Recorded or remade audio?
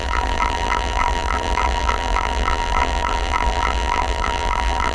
remade